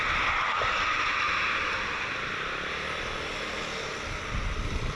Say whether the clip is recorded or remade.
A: recorded